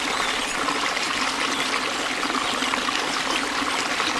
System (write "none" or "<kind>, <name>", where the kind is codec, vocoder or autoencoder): none